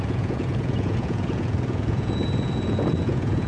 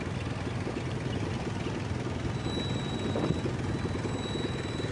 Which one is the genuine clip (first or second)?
second